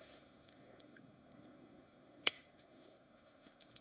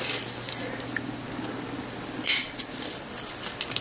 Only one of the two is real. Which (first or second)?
second